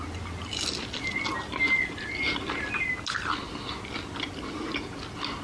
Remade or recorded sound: recorded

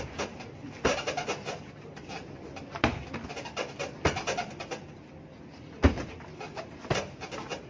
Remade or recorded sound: recorded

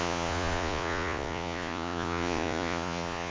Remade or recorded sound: remade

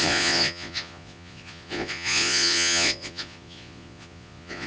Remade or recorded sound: remade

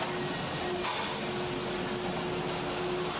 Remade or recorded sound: recorded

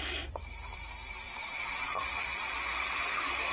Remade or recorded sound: remade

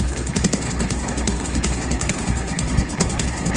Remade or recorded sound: remade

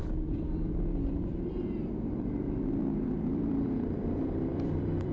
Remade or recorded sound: remade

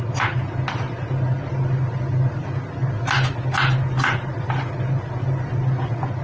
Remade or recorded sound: recorded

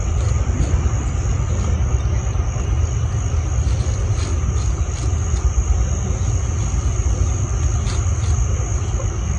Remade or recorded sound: recorded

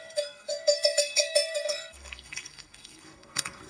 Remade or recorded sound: remade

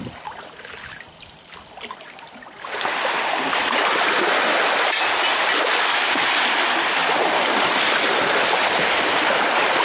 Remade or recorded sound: recorded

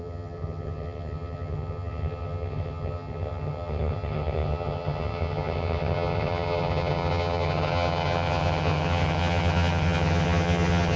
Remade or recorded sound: remade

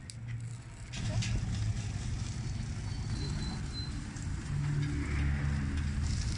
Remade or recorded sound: recorded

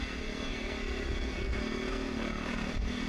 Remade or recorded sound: remade